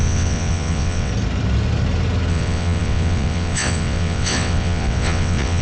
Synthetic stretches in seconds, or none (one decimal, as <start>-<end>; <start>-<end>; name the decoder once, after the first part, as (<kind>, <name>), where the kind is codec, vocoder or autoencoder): 0.0-1.1 (vocoder, WaveNeXt); 2.3-5.6